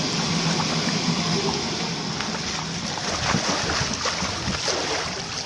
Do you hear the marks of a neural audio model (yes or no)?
yes